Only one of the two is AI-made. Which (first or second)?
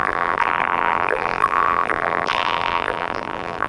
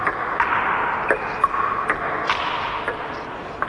first